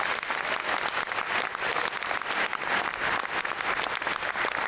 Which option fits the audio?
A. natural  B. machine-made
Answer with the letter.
A